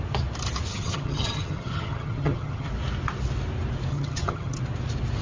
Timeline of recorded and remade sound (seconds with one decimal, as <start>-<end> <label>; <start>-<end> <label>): 0.0-0.7 recorded; 0.7-2.7 remade; 2.7-3.9 recorded; 3.9-4.6 remade; 4.6-5.2 recorded